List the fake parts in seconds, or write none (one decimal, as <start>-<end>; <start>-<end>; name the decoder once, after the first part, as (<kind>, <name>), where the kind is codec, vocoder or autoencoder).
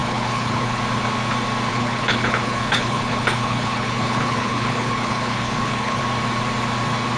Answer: 0.0-0.8 (codec, HILCodec); 1.7-6.0